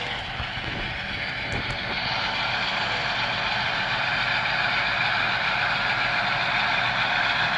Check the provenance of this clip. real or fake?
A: real